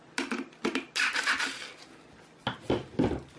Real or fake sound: real